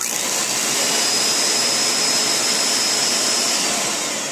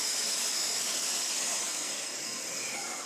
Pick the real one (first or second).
first